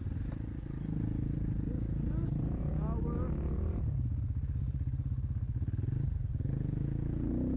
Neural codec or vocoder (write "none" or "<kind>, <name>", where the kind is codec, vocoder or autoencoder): none